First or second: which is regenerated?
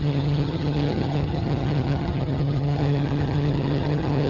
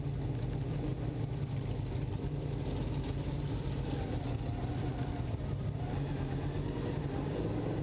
first